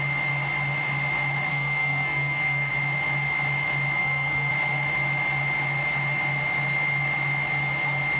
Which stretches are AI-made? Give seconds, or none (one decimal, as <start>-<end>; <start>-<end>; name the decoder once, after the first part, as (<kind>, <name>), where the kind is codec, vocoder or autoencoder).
1.5-2.7 (codec, SNAC); 4.0-4.5